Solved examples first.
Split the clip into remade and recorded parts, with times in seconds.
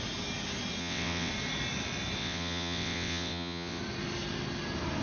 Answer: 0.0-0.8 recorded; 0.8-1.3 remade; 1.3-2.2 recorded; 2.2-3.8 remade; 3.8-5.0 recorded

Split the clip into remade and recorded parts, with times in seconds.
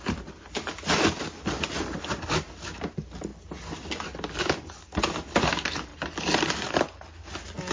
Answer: 0.0-7.7 recorded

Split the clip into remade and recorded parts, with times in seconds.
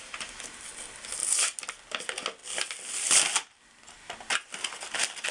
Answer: 0.0-5.3 recorded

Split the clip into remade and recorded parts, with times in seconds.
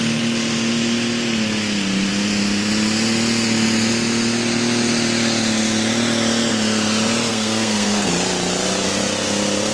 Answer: 0.0-7.3 recorded; 7.3-8.1 remade; 8.1-9.7 recorded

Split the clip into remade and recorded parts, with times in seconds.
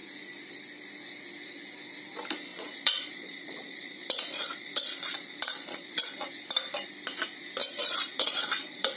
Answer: 0.0-2.5 recorded; 2.5-6.3 remade; 6.3-7.6 recorded; 7.6-9.0 remade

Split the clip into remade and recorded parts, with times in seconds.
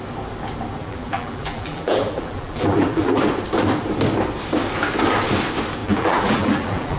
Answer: 0.0-0.8 recorded; 0.8-3.2 remade; 3.2-5.8 recorded; 5.8-7.0 remade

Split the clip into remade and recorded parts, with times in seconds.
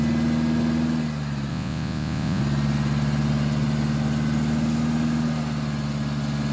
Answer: 0.0-1.5 recorded; 1.5-2.4 remade; 2.4-6.5 recorded